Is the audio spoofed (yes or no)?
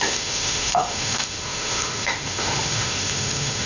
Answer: yes